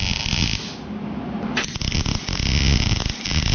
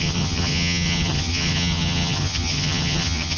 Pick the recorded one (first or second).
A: first